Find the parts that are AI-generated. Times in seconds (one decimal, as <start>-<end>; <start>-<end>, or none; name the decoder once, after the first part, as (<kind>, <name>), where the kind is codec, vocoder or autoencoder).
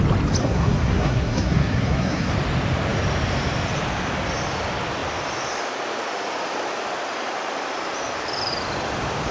0.4-2.3 (codec, SNAC)